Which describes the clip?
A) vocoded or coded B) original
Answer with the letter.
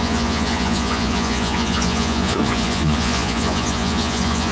A